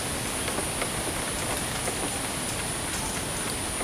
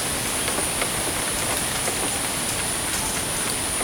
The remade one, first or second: second